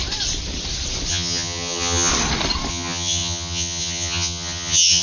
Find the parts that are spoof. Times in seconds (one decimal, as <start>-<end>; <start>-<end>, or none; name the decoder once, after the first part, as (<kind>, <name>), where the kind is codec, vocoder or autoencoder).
1.1-2.1 (vocoder, HiFi-GAN); 2.7-5.0